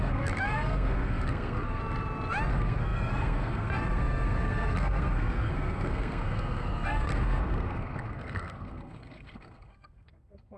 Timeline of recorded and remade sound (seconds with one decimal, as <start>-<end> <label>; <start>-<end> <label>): 0.0-1.8 remade; 1.8-2.5 recorded; 2.5-10.6 remade